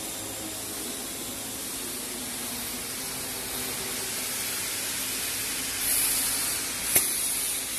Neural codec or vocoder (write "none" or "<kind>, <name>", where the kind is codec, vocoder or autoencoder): none